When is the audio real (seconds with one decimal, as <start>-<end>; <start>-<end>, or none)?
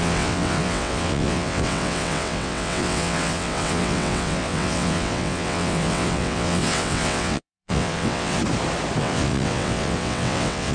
8.4-9.0